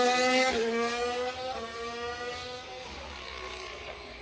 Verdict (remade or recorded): remade